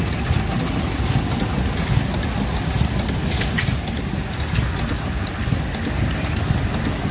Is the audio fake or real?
real